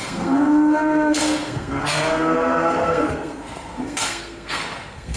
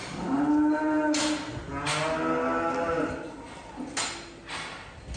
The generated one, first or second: first